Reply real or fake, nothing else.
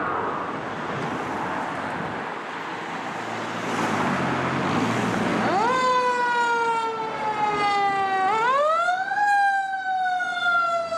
real